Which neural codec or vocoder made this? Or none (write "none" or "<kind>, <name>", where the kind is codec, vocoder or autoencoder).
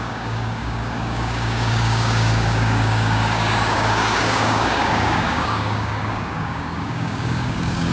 codec, DAC